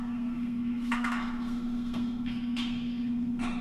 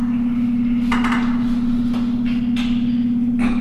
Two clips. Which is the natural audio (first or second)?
second